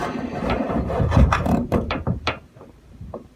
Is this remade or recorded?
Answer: remade